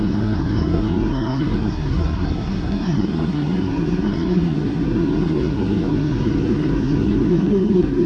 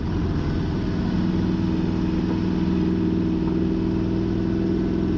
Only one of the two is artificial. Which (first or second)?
first